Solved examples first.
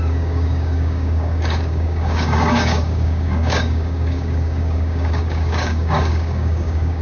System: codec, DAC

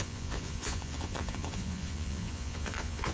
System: vocoder, Vocos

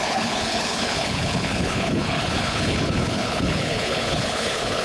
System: codec, HILCodec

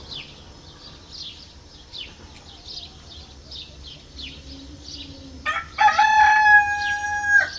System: none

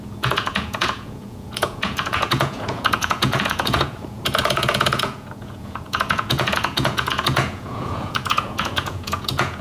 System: vocoder, Vocos